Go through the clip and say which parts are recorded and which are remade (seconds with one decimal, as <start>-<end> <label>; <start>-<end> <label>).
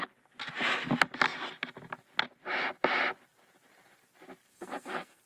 0.0-4.5 recorded; 4.5-5.3 remade